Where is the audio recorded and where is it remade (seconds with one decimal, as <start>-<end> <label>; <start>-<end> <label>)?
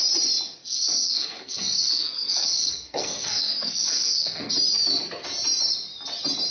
0.0-0.6 recorded; 0.6-4.5 remade; 4.5-6.5 recorded